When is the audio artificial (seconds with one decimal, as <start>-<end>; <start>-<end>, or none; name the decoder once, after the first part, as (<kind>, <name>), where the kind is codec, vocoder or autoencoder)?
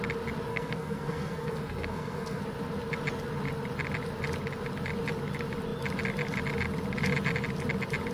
0.5-2.4 (codec, SNAC)